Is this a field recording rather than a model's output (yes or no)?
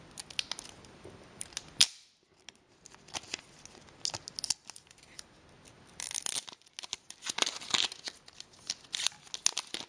yes